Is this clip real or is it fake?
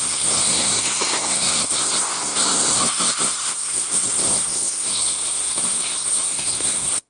fake